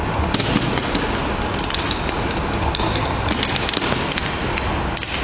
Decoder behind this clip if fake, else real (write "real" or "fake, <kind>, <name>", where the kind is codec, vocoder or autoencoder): real